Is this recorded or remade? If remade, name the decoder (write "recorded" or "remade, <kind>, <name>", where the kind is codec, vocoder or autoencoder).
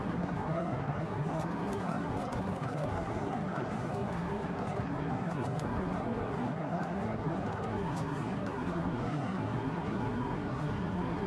remade, codec, SNAC